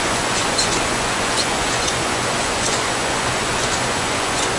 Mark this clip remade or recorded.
remade